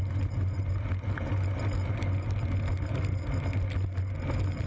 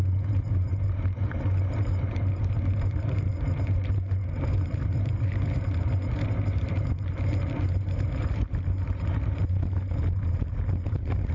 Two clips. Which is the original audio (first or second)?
first